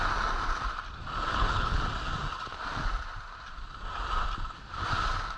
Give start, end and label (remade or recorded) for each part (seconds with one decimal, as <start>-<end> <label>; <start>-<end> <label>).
0.0-1.3 recorded; 1.3-1.8 remade; 1.8-5.4 recorded